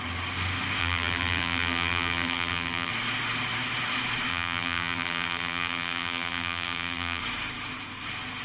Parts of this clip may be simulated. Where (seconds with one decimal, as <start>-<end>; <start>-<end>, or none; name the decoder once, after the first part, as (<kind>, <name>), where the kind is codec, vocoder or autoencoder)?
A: 0.8-2.9 (vocoder, BigVGAN v2); 4.3-7.2